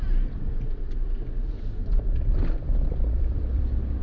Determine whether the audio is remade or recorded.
remade